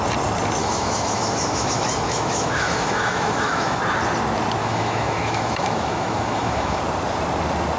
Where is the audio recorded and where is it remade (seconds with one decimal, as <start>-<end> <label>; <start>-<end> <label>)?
0.0-0.6 recorded; 0.6-3.8 remade; 3.8-4.6 recorded; 4.6-6.8 remade; 6.8-7.8 recorded